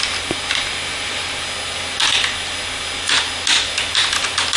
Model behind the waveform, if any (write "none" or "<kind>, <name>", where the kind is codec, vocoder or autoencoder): none